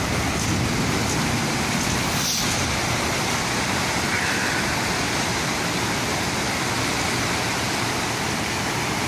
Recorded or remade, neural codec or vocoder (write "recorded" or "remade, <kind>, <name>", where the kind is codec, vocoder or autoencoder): recorded